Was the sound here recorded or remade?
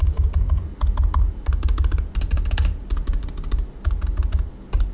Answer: recorded